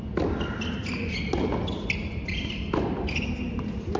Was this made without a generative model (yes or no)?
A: yes